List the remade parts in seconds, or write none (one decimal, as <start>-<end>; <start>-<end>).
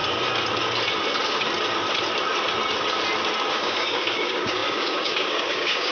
3.5-5.9